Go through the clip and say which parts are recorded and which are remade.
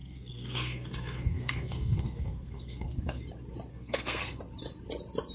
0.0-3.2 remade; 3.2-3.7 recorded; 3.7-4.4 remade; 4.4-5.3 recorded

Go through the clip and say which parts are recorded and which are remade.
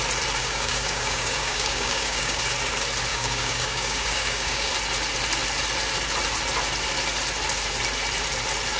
0.0-0.4 recorded; 0.4-2.4 remade; 2.4-3.1 recorded; 3.1-4.7 remade; 4.7-8.8 recorded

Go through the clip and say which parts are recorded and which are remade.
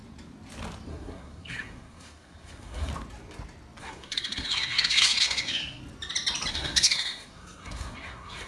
0.0-0.9 recorded; 0.9-2.9 remade; 2.9-3.8 recorded; 3.8-5.8 remade; 5.8-6.5 recorded; 6.5-8.5 remade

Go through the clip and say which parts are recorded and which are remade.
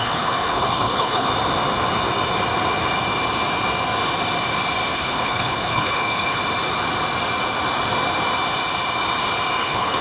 0.0-1.3 remade; 1.3-4.9 recorded; 4.9-6.4 remade; 6.4-9.6 recorded; 9.6-10.0 remade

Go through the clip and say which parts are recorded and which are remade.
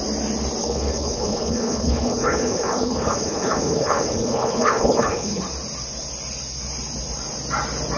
0.0-0.6 recorded; 0.6-5.4 remade; 5.4-8.0 recorded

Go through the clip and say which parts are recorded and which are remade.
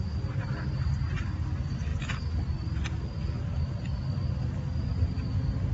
0.0-5.7 recorded